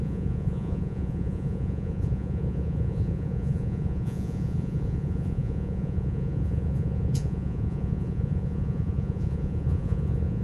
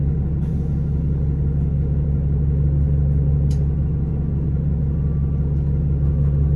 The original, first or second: second